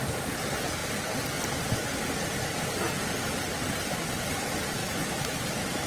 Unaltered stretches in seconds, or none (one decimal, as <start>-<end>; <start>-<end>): 0.0-4.8; 5.4-5.9